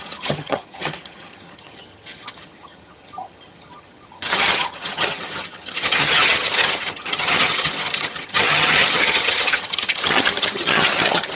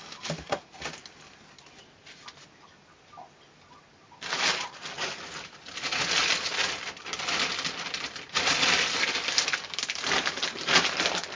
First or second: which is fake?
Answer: first